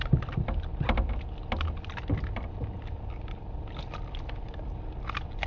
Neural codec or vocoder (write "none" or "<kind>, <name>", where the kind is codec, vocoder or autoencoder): none